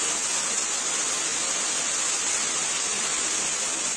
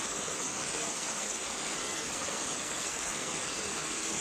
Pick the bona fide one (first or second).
first